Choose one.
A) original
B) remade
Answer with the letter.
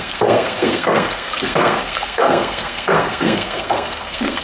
B